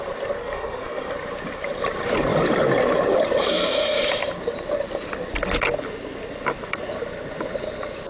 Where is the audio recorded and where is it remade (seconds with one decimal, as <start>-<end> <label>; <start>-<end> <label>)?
0.0-0.4 recorded; 0.4-1.1 remade; 1.1-8.1 recorded